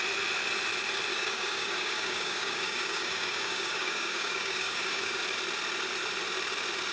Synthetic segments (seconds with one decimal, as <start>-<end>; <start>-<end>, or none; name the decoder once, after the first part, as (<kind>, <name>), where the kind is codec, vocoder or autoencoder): 1.1-5.2 (codec, DAC)